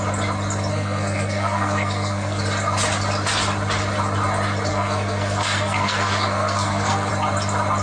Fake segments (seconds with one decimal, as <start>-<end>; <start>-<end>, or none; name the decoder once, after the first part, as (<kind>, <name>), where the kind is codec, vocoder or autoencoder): 0.7-2.4 (codec, SNAC); 4.7-7.1